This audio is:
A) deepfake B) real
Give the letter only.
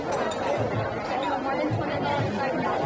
B